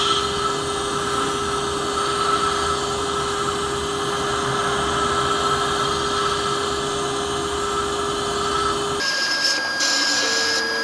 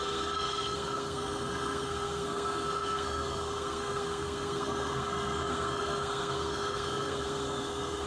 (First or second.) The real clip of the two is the first